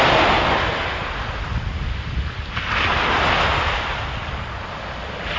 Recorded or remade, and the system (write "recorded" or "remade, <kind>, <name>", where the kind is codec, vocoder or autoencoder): recorded